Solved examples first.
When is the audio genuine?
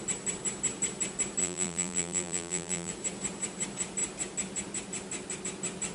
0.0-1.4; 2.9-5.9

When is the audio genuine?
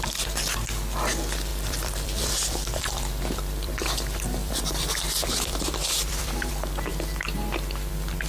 0.0-1.5; 6.5-8.3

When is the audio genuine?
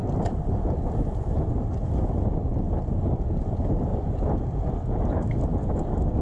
0.6-3.9; 4.7-6.2